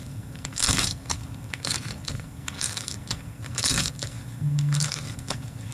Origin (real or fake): fake